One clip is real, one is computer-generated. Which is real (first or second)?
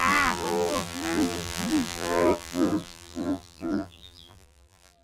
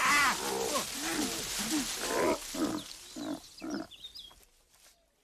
second